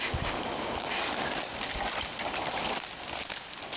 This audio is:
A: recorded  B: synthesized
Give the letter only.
A